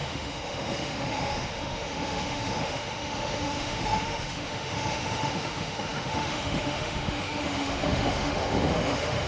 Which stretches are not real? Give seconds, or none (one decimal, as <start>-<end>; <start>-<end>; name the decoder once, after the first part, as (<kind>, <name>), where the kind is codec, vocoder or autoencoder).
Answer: 0.0-9.3 (autoencoder, DAC-VAE)